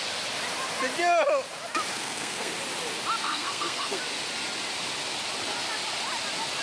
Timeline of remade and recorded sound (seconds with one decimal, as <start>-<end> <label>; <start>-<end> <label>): 0.0-1.9 recorded; 1.9-2.5 remade; 2.5-3.2 recorded; 3.2-4.0 remade; 4.0-6.6 recorded

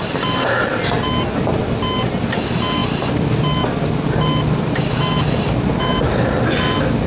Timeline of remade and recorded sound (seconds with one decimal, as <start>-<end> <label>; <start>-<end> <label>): 0.0-7.1 recorded

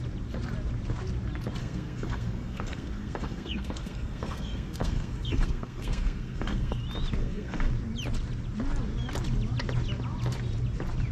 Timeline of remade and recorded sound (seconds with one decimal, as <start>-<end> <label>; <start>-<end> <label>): 0.0-1.6 recorded; 1.6-6.8 remade; 6.8-7.2 recorded; 7.2-7.7 remade; 7.7-11.1 recorded

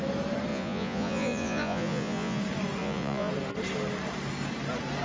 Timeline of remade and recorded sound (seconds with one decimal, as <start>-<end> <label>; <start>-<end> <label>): 0.0-0.5 recorded; 0.5-2.4 remade; 2.4-2.8 recorded; 2.8-3.3 remade; 3.3-5.0 recorded

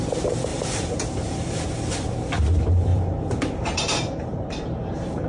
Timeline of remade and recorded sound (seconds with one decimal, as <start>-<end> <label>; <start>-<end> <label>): 0.0-0.5 recorded; 0.5-1.7 remade; 1.7-2.9 recorded; 2.9-5.3 remade

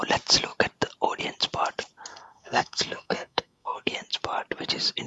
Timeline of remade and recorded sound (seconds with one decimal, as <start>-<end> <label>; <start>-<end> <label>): 0.0-2.1 recorded; 2.1-3.9 remade; 3.9-5.1 recorded